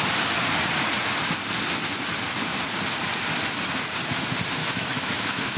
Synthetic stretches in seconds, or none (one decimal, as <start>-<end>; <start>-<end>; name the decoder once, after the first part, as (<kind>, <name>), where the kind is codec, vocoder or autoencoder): 4.6-5.6 (autoencoder, DAC-VAE)